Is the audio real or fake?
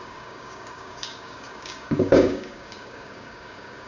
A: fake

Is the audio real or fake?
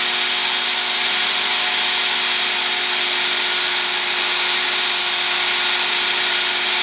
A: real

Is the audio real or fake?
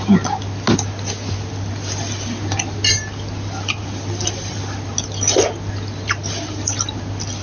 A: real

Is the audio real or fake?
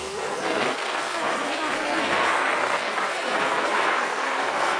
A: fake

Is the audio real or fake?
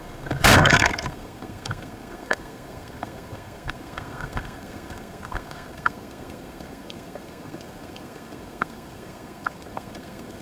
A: fake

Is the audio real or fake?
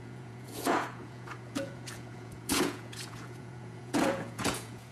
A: fake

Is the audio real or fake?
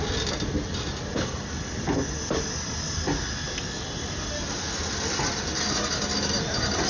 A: real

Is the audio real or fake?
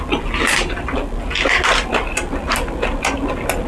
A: real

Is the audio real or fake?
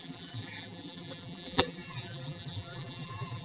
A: fake